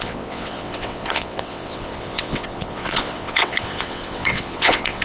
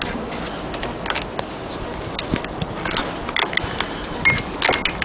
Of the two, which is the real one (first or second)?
second